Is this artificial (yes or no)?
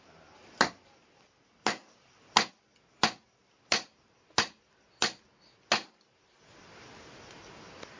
no